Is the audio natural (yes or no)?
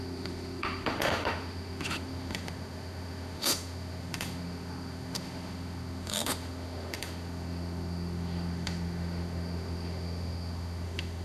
no